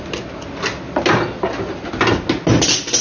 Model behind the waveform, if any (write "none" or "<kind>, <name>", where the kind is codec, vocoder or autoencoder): none